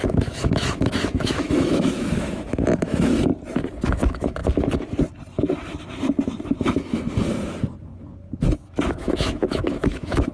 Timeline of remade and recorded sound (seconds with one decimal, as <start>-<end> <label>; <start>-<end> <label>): 0.0-3.3 remade; 3.3-3.9 recorded; 3.9-4.4 remade; 4.4-8.9 recorded; 8.9-10.3 remade